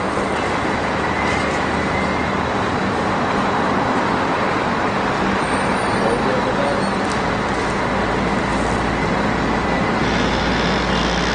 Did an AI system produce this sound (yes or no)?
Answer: no